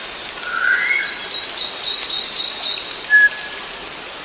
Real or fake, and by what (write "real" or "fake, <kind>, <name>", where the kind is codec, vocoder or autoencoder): real